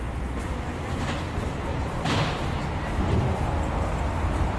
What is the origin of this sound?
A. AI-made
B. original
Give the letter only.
B